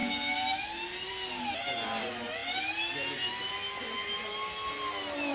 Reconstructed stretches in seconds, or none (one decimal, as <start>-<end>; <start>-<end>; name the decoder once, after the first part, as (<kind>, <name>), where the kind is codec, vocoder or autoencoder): none